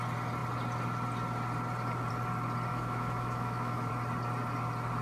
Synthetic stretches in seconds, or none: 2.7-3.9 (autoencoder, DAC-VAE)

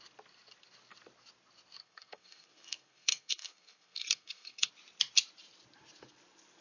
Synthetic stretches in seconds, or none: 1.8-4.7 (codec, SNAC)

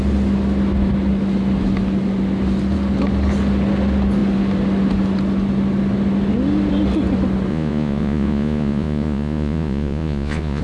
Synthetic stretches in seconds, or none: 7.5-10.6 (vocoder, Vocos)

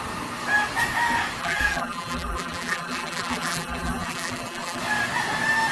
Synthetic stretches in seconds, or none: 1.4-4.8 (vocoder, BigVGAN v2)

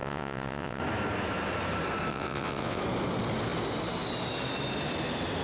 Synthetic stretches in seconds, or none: 0.0-0.8 (vocoder, WaveNeXt); 2.1-2.8

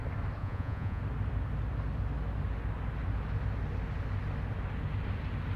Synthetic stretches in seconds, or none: 0.4-1.0 (vocoder, Vocos)

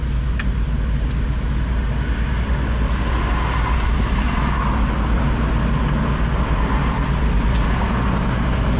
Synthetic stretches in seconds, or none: none

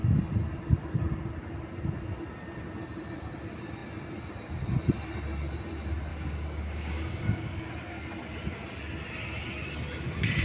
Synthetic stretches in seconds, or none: 6.1-7.7 (codec, DAC)